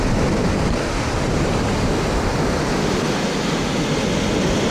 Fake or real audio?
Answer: real